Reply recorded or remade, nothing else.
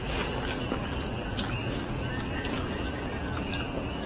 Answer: remade